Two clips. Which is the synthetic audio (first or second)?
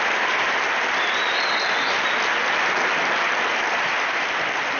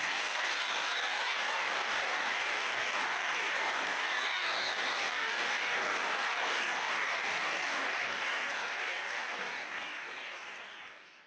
second